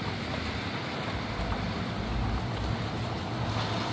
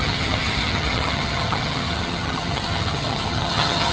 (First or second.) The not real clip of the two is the second